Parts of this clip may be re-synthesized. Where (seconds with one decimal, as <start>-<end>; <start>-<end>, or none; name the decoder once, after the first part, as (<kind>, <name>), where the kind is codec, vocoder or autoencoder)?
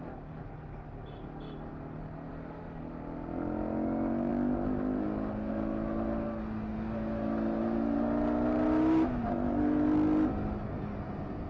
none